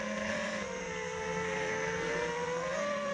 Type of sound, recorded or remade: remade